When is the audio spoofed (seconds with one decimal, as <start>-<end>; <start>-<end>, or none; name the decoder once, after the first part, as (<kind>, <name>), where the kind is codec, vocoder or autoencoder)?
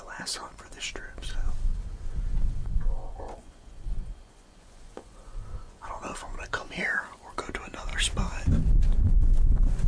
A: 0.0-7.9 (vocoder, Vocos); 9.0-9.9